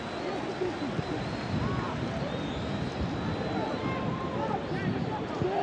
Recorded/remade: recorded